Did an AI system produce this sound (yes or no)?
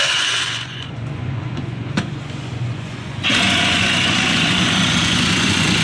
yes